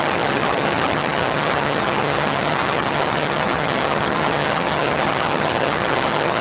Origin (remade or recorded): remade